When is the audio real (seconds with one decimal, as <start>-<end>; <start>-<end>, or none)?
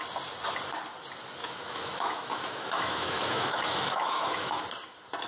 0.0-1.4; 4.6-5.3